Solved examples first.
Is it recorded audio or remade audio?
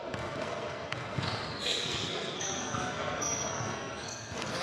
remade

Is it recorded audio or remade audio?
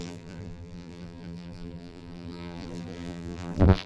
remade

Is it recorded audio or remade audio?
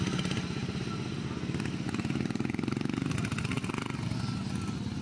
recorded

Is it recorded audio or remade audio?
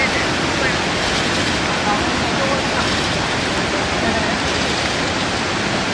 recorded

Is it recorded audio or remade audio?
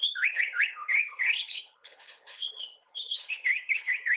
remade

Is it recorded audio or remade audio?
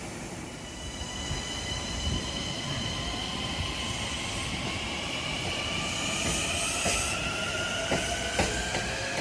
recorded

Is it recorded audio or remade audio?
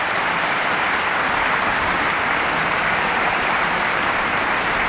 remade